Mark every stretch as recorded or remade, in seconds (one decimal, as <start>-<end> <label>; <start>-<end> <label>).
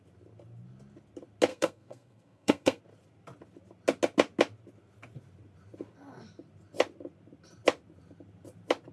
0.0-1.5 recorded; 1.5-2.8 remade; 2.8-8.9 recorded